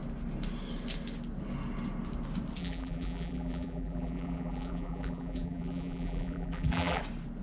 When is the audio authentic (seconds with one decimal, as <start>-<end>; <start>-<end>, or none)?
0.0-2.6; 7.0-7.4